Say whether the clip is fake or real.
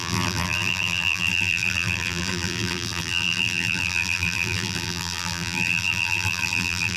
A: fake